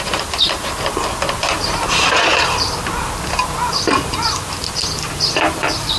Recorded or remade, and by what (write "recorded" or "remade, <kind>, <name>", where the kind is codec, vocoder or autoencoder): remade, vocoder, BigVGAN v2